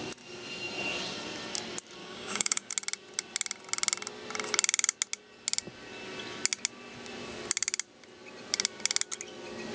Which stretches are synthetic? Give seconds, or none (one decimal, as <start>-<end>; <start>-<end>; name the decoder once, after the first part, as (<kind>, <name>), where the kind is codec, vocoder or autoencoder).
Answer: 2.0-2.7 (codec, DAC)